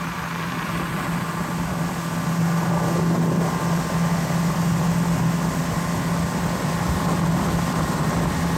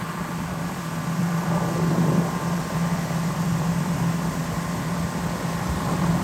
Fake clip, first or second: second